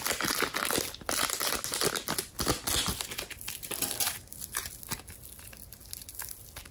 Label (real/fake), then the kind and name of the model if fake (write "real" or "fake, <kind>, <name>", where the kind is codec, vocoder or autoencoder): real